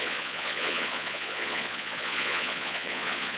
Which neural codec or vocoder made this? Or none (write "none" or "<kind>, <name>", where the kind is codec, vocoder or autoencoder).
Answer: vocoder, Vocos